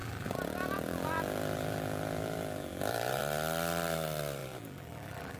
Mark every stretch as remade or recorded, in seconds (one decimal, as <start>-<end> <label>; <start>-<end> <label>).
0.0-3.2 remade; 3.2-4.4 recorded; 4.4-5.4 remade